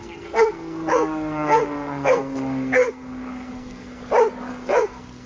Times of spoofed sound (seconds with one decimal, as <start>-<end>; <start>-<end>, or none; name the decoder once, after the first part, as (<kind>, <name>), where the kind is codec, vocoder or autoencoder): 0.0-4.0 (codec, SNAC); 4.5-5.3